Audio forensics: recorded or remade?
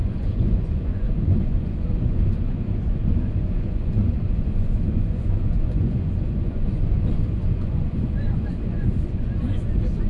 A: remade